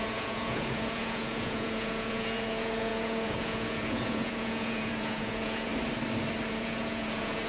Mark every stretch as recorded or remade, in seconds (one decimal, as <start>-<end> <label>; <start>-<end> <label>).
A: 0.0-5.7 remade; 5.7-6.5 recorded; 6.5-7.5 remade